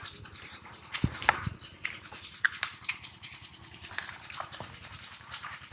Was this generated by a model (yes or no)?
yes